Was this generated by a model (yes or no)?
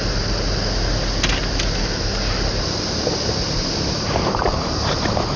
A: no